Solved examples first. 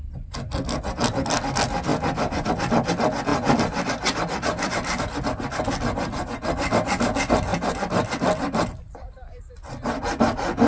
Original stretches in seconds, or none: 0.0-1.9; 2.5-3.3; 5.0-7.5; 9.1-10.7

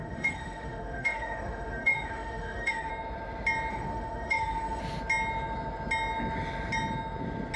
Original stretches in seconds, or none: 2.9-3.7; 4.8-7.6